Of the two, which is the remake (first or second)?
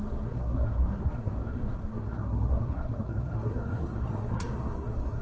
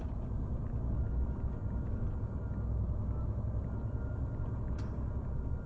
first